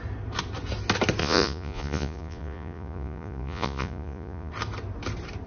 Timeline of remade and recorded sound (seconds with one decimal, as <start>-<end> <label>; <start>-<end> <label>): 0.0-1.2 recorded; 1.2-4.5 remade; 4.5-5.5 recorded